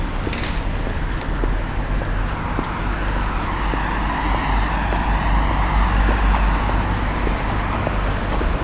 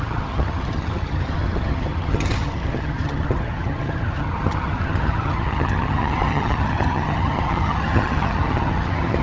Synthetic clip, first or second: second